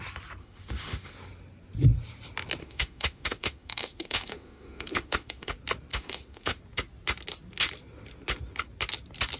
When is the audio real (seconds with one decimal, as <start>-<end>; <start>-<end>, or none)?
0.0-0.4; 1.1-2.6; 5.5-5.9; 6.6-9.4